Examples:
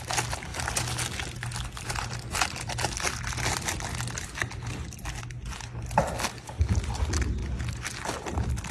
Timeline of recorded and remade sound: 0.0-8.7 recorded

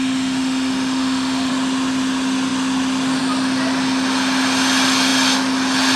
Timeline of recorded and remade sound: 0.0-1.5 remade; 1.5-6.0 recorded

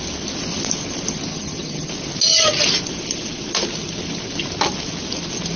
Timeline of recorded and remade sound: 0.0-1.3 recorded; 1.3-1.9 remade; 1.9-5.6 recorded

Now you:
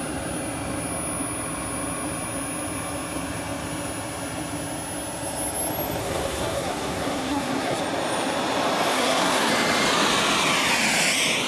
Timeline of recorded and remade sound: 0.0-6.0 recorded; 6.0-7.8 remade; 7.8-8.9 recorded; 8.9-9.5 remade; 9.5-11.5 recorded